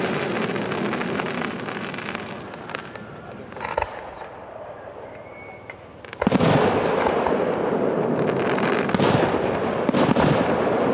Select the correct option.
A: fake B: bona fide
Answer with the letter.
B